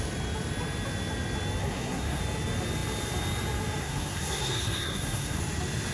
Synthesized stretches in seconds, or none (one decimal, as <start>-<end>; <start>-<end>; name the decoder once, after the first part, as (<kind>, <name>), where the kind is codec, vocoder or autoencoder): 1.6-2.2 (codec, SNAC); 3.8-5.4